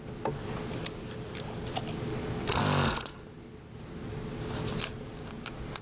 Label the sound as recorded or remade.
recorded